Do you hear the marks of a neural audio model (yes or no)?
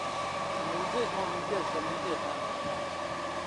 yes